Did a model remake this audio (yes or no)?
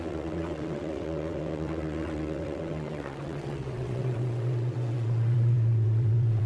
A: yes